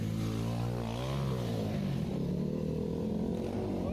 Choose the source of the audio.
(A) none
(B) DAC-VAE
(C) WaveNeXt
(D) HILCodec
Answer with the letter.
A